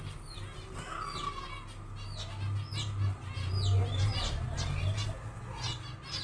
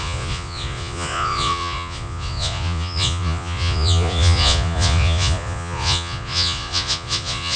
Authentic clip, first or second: first